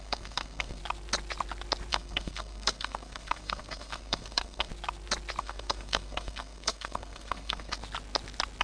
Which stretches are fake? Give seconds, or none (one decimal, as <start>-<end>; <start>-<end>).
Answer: 0.0-0.8; 1.9-4.7; 5.4-7.8